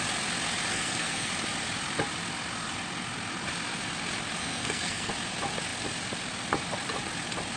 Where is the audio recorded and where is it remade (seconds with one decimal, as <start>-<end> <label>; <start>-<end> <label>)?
0.0-0.7 recorded; 0.7-1.3 remade; 1.3-4.4 recorded; 4.4-5.1 remade; 5.1-7.6 recorded